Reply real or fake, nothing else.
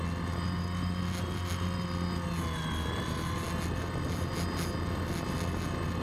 real